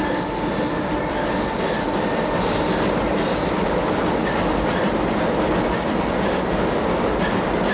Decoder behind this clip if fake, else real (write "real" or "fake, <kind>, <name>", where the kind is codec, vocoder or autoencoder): real